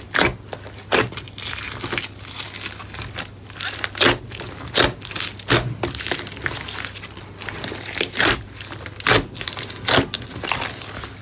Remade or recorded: recorded